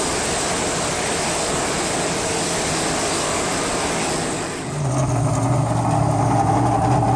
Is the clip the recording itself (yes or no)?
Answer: yes